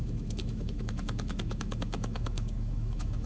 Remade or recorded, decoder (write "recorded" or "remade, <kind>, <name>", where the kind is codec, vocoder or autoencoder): remade, autoencoder, DAC-VAE